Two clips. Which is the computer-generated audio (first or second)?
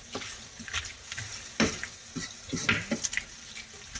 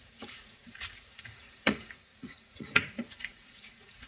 second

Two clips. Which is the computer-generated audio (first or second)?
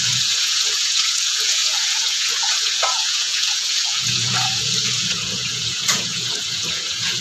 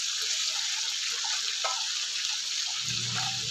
first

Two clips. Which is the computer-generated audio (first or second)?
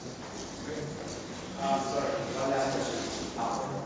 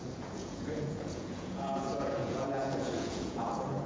second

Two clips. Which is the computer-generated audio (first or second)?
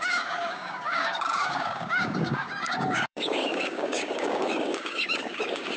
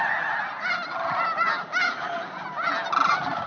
first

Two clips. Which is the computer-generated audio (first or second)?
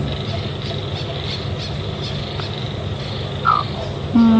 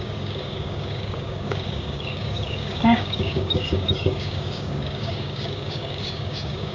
second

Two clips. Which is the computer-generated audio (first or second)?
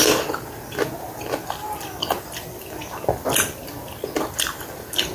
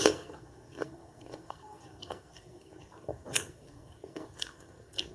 second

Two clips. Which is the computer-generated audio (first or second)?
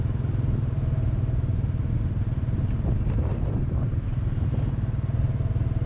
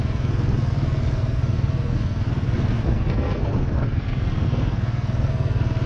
second